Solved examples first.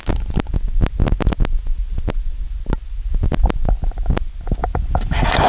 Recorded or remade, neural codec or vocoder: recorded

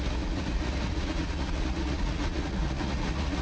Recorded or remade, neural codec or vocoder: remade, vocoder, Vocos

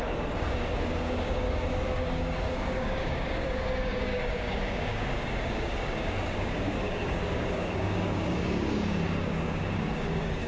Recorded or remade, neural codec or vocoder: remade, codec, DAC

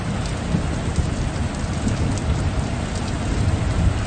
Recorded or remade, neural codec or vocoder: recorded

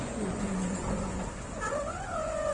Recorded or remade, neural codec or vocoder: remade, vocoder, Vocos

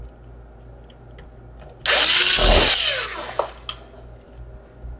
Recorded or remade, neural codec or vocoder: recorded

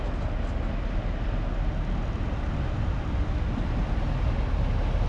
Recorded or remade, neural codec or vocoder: recorded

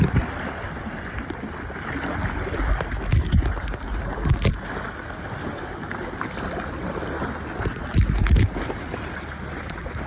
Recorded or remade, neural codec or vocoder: recorded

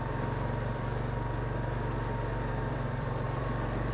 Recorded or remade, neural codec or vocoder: remade, vocoder, BigVGAN v2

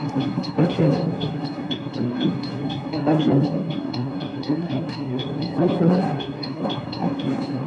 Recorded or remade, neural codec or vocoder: remade, codec, SNAC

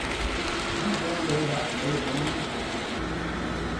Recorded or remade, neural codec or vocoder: recorded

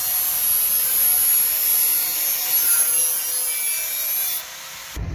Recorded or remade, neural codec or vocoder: recorded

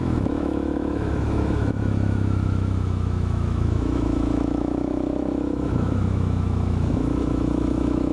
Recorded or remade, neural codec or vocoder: remade, autoencoder, DAC-VAE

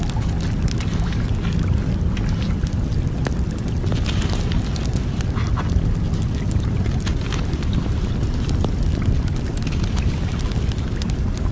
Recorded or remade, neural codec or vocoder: recorded